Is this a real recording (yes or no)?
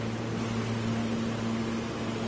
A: yes